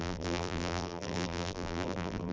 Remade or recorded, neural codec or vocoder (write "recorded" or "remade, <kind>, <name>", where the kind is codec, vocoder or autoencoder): remade, vocoder, BigVGAN v2